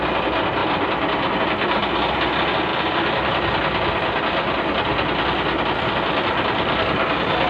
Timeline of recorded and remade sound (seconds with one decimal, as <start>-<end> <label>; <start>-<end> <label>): 0.0-7.5 recorded